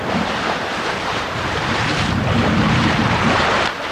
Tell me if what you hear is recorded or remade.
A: remade